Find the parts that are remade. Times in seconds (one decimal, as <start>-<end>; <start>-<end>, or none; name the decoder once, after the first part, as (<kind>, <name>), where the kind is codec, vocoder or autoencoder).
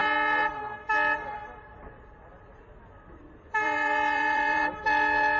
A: 3.2-4.6 (vocoder, BigVGAN v2)